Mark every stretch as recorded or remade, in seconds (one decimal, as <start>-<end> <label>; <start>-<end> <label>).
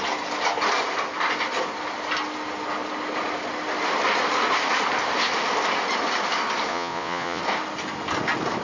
0.0-6.7 recorded; 6.7-7.4 remade; 7.4-8.6 recorded